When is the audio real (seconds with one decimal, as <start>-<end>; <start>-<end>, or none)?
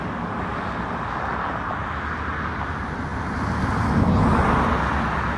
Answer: 0.0-5.4